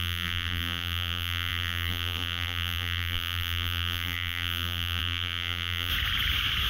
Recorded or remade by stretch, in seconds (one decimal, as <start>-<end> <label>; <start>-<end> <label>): 0.0-5.9 remade; 5.9-6.7 recorded